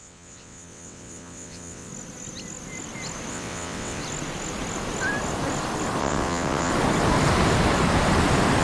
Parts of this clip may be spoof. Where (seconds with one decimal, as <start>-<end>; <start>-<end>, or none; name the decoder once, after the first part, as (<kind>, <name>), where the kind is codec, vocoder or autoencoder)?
0.0-1.9 (vocoder, WaveNeXt); 3.3-4.0; 6.0-6.7

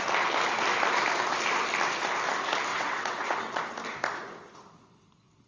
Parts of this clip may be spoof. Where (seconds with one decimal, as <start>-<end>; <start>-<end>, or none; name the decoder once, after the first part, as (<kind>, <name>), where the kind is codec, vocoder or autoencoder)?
2.7-3.6 (vocoder, WaveNeXt)

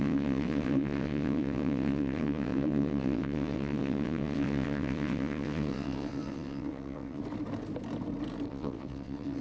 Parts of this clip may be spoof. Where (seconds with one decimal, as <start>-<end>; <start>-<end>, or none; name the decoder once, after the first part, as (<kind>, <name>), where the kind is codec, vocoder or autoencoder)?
0.0-7.2 (vocoder, WaveNeXt); 8.5-9.4

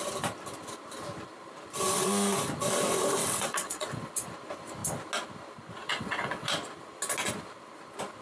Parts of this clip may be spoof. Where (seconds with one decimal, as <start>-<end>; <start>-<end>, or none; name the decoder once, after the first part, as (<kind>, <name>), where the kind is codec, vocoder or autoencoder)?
3.2-4.1 (vocoder, WaveNeXt); 5.9-6.5

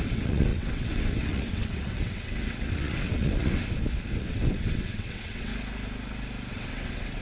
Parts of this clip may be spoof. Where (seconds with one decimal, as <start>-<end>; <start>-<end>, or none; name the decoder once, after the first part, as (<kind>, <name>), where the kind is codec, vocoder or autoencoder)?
0.0-3.6 (vocoder, WaveNeXt); 4.2-5.5; 6.5-7.2

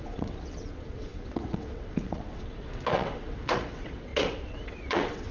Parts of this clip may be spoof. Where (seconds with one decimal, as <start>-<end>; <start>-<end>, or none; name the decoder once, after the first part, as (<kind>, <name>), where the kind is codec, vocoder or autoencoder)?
0.0-5.3 (vocoder, WaveNeXt)

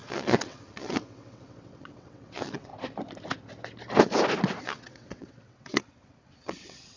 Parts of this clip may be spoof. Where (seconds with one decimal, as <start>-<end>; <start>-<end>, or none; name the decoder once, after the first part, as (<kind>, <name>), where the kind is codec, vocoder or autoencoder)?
0.0-2.7 (vocoder, WaveNeXt); 4.6-7.0

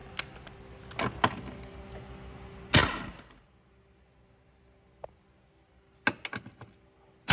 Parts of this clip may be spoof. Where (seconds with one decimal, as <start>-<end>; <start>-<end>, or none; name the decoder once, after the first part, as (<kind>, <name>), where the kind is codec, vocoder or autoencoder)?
none